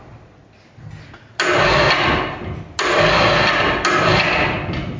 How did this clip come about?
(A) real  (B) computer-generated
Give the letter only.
A